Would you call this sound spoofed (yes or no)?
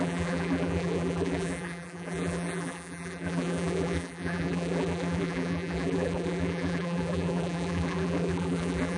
yes